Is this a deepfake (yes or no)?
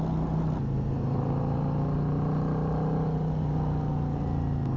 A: no